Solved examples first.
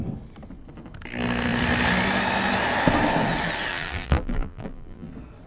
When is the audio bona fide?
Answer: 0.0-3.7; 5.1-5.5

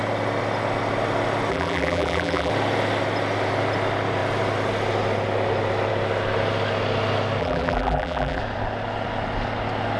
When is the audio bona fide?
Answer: 0.0-1.5; 2.5-7.4; 8.4-10.0

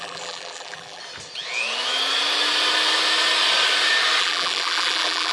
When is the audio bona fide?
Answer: 1.0-4.2

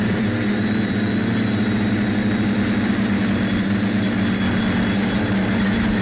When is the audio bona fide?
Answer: none

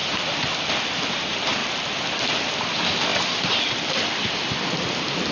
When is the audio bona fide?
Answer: 0.0-1.6; 2.1-5.3

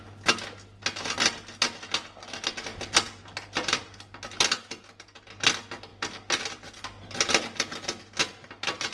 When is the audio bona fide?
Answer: 0.0-8.9